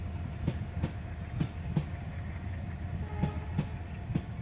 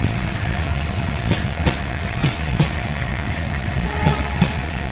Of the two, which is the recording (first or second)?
first